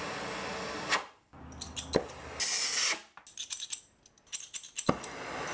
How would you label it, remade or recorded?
recorded